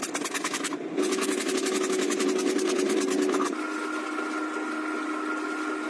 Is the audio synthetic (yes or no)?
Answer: no